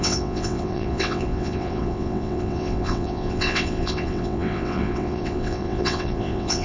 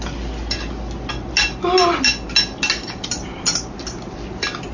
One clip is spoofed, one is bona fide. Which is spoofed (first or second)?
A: first